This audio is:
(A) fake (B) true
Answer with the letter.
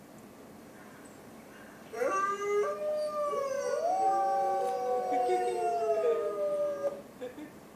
B